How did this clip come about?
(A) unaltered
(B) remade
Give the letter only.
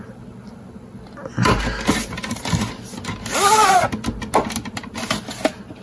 A